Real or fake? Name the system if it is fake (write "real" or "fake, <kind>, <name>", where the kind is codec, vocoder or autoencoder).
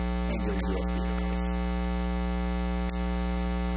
real